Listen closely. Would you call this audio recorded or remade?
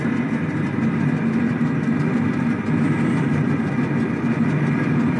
recorded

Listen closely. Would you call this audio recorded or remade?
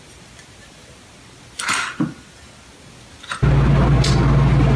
recorded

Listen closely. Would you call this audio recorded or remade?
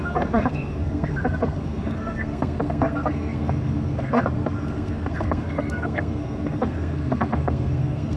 remade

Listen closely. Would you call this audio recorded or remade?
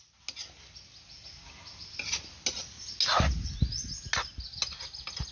recorded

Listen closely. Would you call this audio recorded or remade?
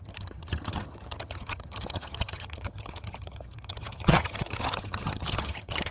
remade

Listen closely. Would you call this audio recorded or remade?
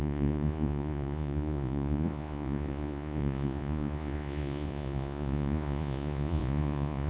remade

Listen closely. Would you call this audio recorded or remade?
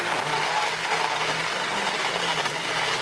recorded